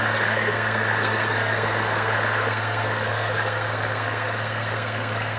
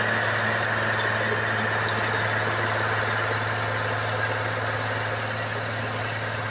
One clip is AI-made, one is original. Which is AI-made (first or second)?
first